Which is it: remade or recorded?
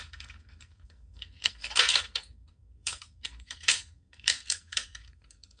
remade